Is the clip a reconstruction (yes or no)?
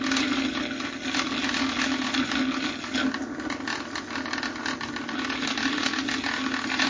no